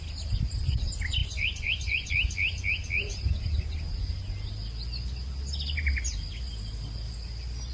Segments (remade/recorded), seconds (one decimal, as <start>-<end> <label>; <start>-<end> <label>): 0.0-1.2 recorded; 1.2-2.1 remade; 2.1-7.7 recorded